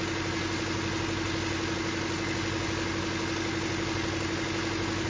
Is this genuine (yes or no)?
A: yes